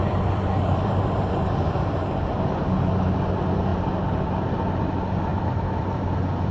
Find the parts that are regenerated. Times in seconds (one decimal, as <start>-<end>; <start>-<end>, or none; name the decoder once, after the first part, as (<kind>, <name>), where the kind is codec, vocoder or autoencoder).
0.0-2.0 (vocoder, BigVGAN v2); 3.7-4.3; 5.3-6.5